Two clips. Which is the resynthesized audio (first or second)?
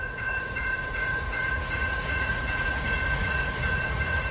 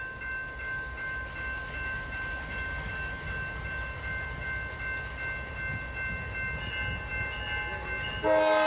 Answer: first